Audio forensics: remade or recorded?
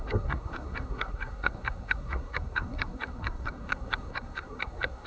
remade